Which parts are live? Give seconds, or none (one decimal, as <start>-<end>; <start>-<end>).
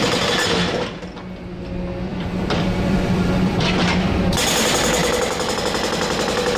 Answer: 0.0-2.1; 4.3-6.6